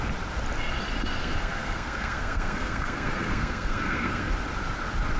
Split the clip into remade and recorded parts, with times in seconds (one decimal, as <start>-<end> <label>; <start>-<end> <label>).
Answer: 0.0-1.2 recorded; 1.2-4.3 remade; 4.3-5.2 recorded